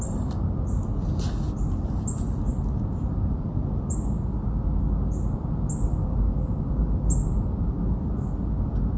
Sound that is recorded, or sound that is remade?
recorded